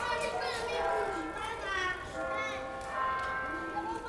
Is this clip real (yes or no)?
no